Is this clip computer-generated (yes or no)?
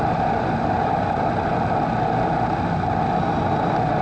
no